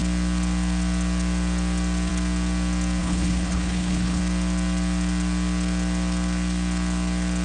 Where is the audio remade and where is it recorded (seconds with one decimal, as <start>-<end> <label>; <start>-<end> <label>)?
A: 0.0-3.0 recorded; 3.0-4.2 remade; 4.2-7.4 recorded